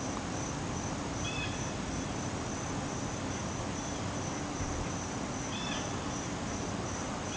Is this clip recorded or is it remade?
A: recorded